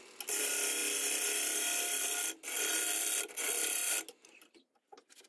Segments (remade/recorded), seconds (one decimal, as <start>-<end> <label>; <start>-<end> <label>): 0.0-5.3 recorded